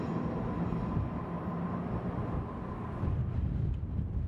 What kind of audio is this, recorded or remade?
recorded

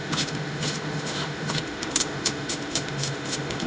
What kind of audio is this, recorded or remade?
remade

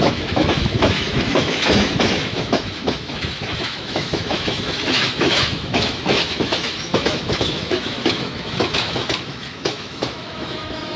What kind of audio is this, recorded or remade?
remade